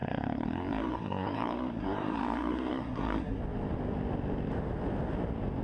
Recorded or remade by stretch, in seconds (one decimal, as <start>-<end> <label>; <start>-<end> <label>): 0.0-3.4 remade; 3.4-5.6 recorded